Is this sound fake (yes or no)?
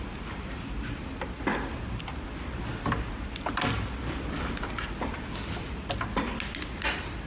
no